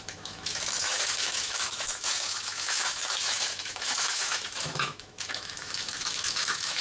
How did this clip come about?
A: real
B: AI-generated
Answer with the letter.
B